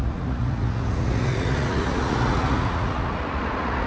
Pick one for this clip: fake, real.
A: fake